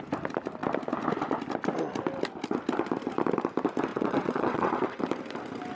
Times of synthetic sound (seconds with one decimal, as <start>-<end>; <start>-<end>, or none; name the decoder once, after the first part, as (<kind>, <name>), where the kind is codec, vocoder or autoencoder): 3.9-5.0 (vocoder, WaveNeXt)